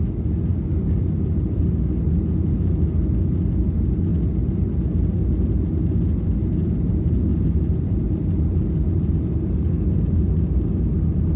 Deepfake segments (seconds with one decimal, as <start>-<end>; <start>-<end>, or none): none